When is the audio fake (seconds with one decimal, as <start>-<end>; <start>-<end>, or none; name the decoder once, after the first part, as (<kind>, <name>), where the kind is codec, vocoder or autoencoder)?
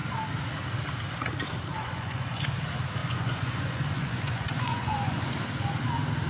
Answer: 1.7-2.6 (vocoder, Vocos); 3.0-5.3